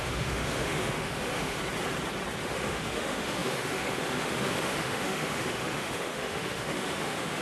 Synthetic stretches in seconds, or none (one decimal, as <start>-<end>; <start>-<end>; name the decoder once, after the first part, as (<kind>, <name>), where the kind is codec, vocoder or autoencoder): 0.0-1.6 (autoencoder, DAC-VAE); 2.4-7.4